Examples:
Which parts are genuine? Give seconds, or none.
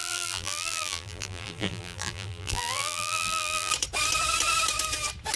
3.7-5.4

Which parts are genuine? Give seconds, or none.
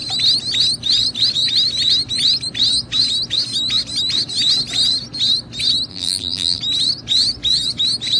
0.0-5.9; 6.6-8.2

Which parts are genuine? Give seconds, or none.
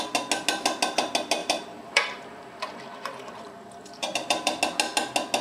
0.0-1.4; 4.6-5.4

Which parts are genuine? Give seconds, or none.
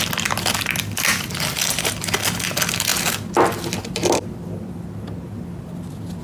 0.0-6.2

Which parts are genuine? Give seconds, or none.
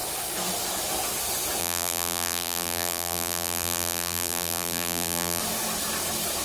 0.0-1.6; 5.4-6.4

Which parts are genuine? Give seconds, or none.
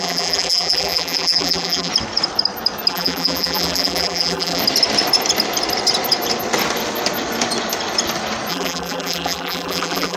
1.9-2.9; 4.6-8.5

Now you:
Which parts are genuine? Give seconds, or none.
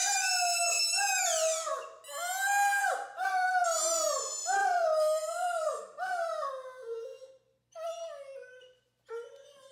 0.0-2.8; 3.5-4.6; 6.5-9.7